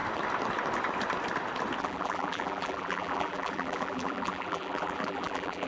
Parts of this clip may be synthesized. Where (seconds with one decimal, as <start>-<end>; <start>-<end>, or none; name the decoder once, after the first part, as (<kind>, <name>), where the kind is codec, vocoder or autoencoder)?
1.8-5.7 (vocoder, BigVGAN v2)